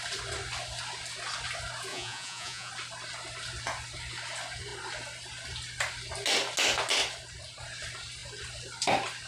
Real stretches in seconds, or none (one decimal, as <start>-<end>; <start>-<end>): 0.0-1.9; 2.7-9.3